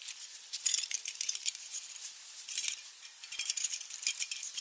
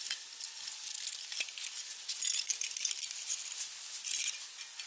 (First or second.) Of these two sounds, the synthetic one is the first